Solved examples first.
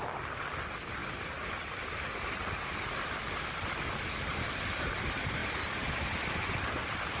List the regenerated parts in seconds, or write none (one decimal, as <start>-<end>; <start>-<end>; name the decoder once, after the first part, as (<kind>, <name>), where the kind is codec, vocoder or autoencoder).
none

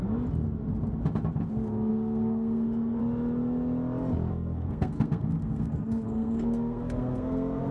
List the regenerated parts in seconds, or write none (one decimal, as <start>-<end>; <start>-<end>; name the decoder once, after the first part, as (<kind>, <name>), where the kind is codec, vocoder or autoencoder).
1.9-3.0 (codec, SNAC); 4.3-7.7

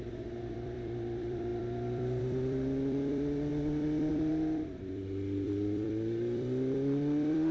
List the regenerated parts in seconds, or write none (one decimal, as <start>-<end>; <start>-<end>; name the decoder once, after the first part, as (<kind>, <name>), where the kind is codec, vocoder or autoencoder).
0.0-7.5 (vocoder, BigVGAN v2)

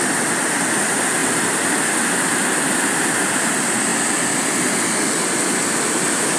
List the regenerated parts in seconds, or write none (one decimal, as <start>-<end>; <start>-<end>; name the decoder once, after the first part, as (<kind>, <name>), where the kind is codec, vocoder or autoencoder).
1.2-1.9 (vocoder, BigVGAN v2)

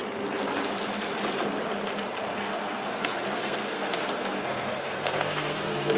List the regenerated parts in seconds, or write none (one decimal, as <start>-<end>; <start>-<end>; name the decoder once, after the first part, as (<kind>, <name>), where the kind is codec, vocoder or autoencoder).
2.4-6.0 (codec, SNAC)

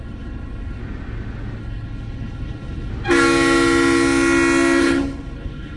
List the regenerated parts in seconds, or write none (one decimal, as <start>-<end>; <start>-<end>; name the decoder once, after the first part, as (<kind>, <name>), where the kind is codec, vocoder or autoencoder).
0.0-0.8 (codec, HILCodec); 1.6-2.9; 4.8-5.8

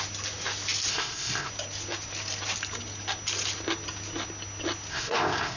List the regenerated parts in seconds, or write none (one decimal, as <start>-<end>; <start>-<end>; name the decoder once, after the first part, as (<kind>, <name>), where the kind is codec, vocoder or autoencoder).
0.9-1.5 (codec, ZipCodec); 4.9-5.6